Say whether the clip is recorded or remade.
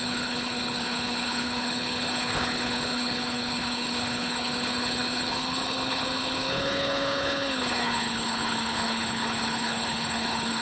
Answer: remade